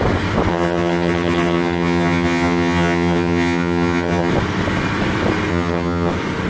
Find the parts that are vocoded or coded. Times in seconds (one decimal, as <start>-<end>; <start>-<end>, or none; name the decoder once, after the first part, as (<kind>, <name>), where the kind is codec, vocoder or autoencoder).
0.5-4.3 (vocoder, HiFi-GAN); 5.5-6.1